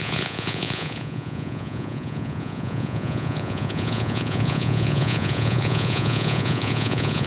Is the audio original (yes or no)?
no